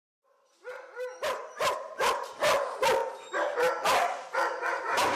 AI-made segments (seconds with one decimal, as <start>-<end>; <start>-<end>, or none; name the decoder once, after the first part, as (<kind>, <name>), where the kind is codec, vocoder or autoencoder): none